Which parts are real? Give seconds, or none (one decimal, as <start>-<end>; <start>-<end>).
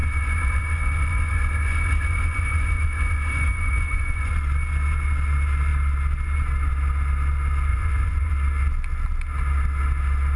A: 4.3-7.7; 8.3-10.4